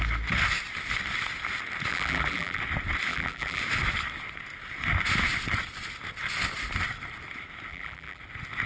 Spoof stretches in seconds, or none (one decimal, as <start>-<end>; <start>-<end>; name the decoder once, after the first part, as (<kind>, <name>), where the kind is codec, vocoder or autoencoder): 1.9-2.6 (vocoder, BigVGAN v2); 3.1-3.6; 7.7-8.2